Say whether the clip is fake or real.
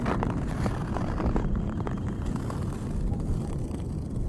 real